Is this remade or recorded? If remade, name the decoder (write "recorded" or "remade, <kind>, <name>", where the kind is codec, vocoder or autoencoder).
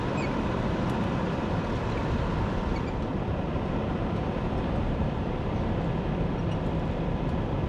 remade, vocoder, BigVGAN v2